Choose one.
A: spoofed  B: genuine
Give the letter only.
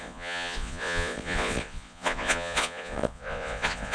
A